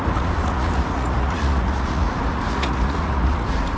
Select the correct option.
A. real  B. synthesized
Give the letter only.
B